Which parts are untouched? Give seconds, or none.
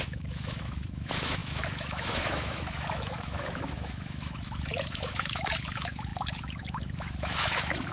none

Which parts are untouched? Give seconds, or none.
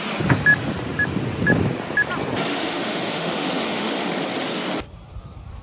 0.0-2.5; 4.1-5.6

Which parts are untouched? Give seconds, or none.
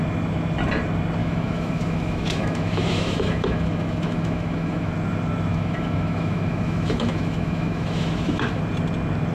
0.0-1.2; 4.9-5.5; 8.6-9.3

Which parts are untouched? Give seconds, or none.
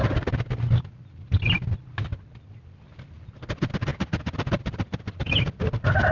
0.0-6.1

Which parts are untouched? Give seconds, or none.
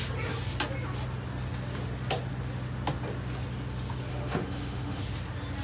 0.0-4.1; 5.0-5.6